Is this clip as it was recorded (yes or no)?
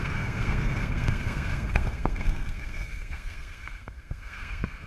no